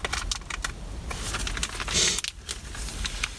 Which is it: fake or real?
real